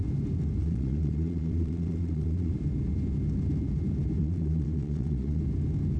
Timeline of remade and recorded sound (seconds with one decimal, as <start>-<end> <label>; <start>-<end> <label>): 0.0-0.6 recorded; 0.6-2.5 remade; 2.5-4.2 recorded; 4.2-5.4 remade; 5.4-6.0 recorded